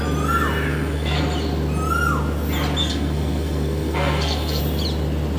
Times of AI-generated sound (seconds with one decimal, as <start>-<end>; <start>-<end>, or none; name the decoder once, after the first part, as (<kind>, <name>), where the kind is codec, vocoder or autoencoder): 0.7-1.2 (codec, SNAC); 2.8-4.6